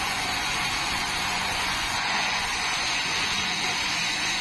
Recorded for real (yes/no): no